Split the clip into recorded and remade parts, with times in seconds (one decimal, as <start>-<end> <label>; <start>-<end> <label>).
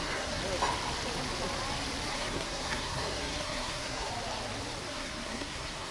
0.0-0.4 remade; 0.4-2.1 recorded; 2.1-4.1 remade; 4.1-4.9 recorded; 4.9-5.9 remade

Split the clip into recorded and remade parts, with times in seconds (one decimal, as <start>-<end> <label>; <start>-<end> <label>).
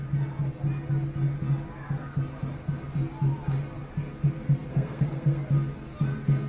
0.0-4.7 recorded; 4.7-5.4 remade; 5.4-6.5 recorded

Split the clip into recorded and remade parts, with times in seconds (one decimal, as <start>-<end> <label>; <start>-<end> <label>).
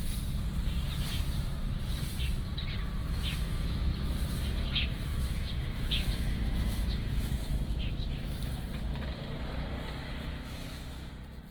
0.0-3.0 recorded; 3.0-3.9 remade; 3.9-5.1 recorded; 5.1-8.6 remade; 8.6-10.0 recorded; 10.0-11.1 remade; 11.1-11.5 recorded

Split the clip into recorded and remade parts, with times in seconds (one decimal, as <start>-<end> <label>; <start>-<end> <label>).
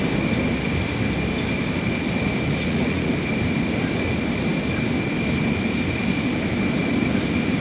0.0-2.5 recorded; 2.5-3.1 remade; 3.1-7.6 recorded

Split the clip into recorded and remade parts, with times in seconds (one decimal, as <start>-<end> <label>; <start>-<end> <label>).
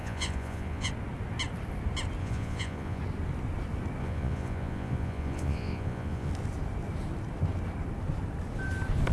0.0-0.9 remade; 0.9-2.2 recorded; 2.2-3.0 remade; 3.0-4.0 recorded; 4.0-6.3 remade; 6.3-9.1 recorded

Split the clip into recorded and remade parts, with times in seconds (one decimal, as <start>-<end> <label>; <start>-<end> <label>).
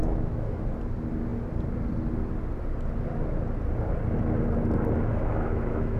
0.0-0.6 remade; 0.6-5.1 recorded; 5.1-6.0 remade